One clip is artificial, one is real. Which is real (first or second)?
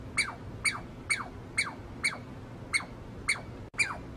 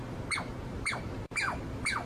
first